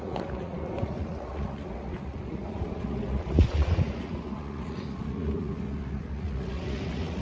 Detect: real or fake fake